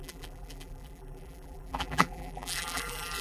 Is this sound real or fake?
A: fake